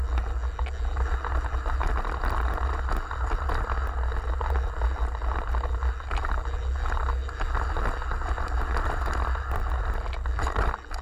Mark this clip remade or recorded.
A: recorded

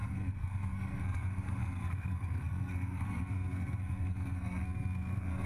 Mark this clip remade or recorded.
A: remade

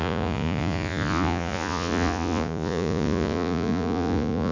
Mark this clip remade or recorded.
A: remade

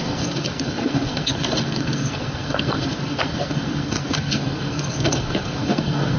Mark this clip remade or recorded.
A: remade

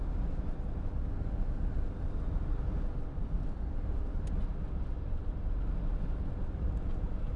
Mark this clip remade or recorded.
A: recorded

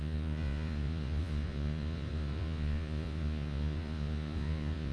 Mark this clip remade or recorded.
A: remade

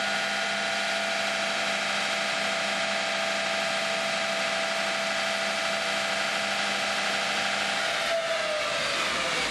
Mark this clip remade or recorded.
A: recorded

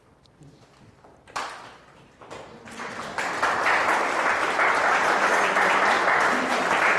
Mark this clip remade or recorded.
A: remade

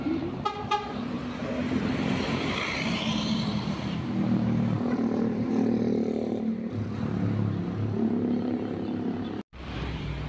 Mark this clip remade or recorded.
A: remade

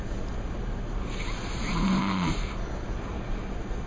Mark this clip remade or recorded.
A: recorded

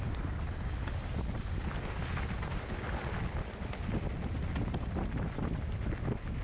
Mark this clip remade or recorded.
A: recorded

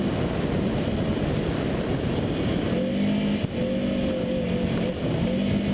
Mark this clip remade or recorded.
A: recorded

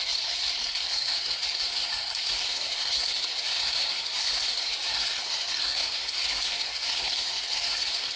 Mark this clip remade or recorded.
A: remade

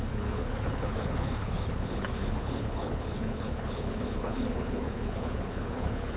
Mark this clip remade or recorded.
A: remade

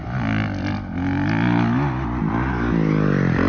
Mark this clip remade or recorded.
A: recorded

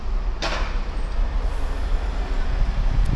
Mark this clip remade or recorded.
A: recorded